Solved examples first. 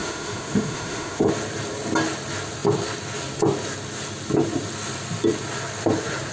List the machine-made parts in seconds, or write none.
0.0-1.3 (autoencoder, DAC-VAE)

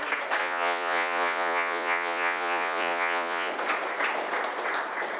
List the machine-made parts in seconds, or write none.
0.4-3.5 (vocoder, Vocos)

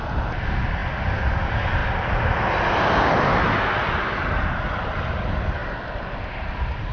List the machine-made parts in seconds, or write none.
none

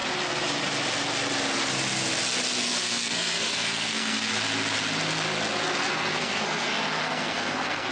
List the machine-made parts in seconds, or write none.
2.6-4.3 (codec, SNAC); 5.9-7.9

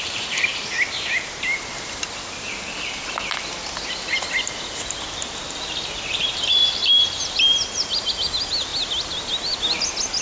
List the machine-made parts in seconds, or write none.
none

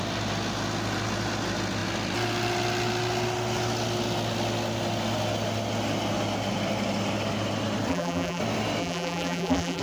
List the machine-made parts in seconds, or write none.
7.9-8.4 (vocoder, BigVGAN v2); 8.8-9.8

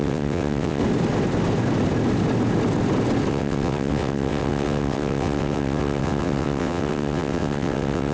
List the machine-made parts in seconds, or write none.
0.0-0.8 (vocoder, WaveNeXt); 3.3-8.1